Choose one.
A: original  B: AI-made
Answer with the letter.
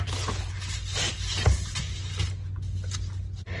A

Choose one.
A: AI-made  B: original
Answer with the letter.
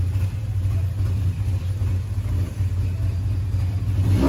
B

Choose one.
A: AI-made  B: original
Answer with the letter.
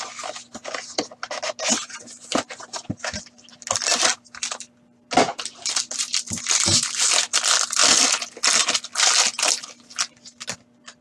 B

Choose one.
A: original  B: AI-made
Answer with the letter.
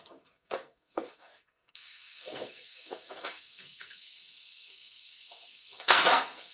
B